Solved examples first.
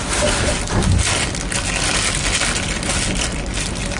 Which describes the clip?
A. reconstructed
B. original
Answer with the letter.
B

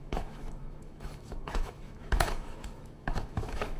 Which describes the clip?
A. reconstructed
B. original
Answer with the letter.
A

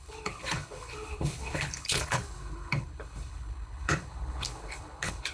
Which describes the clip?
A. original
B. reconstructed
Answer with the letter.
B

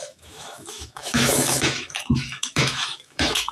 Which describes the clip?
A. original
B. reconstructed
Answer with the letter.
B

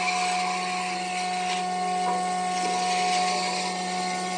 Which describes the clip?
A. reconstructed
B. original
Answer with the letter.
B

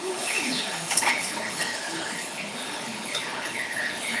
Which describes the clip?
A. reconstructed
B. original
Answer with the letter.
A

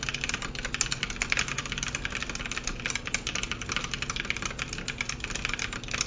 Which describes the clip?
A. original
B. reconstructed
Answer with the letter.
A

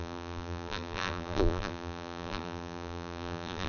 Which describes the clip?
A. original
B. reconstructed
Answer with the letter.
B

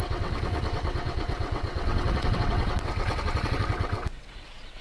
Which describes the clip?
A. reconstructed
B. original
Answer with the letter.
A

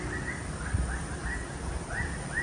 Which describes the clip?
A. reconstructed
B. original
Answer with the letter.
B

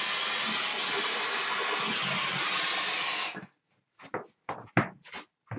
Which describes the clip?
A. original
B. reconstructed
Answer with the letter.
A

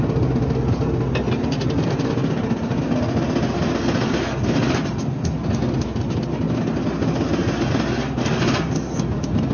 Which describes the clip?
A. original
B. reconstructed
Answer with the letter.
A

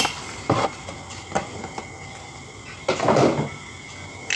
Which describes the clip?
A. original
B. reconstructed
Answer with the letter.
A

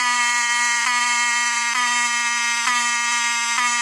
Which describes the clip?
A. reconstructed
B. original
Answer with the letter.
A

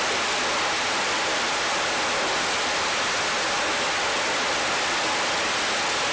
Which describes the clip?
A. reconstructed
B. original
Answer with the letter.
B